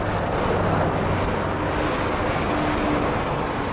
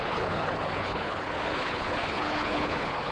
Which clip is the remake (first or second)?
second